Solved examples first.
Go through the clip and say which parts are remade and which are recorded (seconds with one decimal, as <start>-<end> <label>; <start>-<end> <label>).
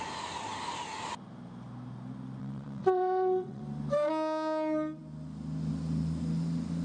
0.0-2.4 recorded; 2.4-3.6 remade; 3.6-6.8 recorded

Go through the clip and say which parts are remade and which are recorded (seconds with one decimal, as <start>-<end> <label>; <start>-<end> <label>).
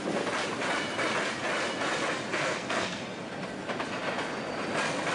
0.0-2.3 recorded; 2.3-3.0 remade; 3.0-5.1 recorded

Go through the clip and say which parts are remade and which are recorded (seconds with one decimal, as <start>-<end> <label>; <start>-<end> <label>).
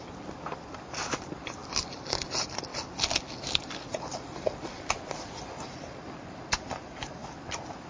0.0-1.6 remade; 1.6-2.2 recorded; 2.2-2.7 remade; 2.7-3.4 recorded; 3.4-7.9 remade